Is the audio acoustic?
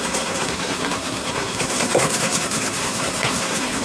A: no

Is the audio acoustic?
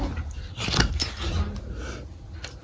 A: yes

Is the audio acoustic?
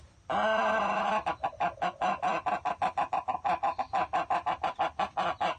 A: yes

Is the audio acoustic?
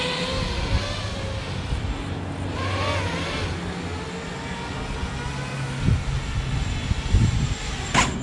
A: yes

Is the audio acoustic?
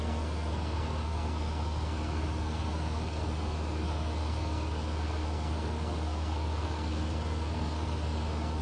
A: no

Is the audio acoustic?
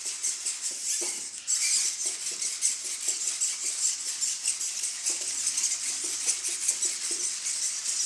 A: yes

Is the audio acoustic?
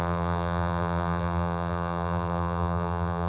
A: no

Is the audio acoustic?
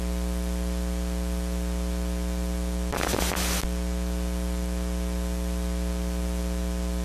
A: yes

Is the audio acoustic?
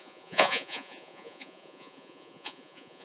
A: no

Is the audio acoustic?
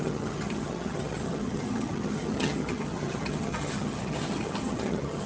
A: no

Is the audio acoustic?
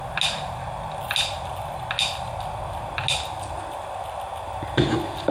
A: yes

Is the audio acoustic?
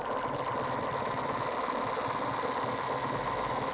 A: yes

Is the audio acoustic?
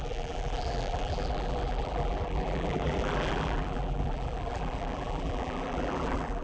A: no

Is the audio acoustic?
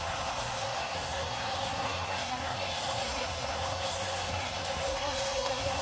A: no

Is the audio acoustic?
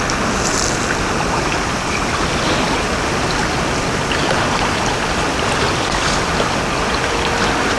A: yes